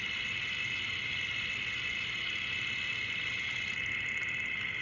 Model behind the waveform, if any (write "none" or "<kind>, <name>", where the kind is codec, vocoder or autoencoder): none